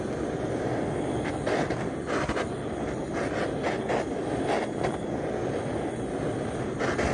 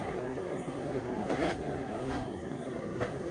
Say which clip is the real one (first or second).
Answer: first